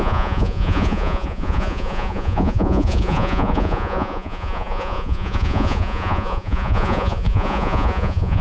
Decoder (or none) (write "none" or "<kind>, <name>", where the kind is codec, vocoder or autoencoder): vocoder, Vocos